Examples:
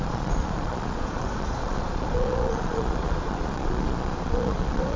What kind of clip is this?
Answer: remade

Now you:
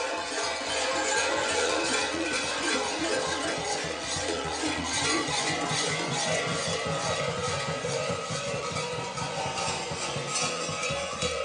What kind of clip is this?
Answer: remade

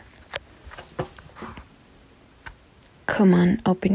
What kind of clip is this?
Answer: recorded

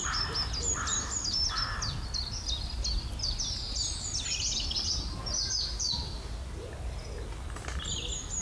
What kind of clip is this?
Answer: recorded